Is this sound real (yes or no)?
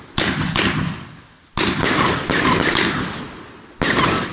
yes